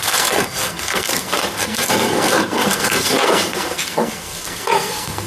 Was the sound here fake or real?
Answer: fake